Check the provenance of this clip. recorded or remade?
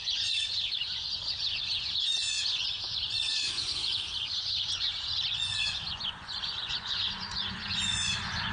remade